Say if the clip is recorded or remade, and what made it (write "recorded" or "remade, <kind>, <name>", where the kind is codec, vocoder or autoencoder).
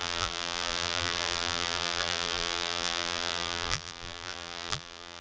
remade, vocoder, BigVGAN v2